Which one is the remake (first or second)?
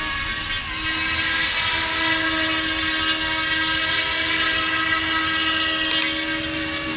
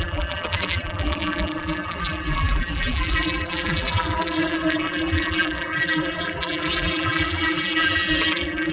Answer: second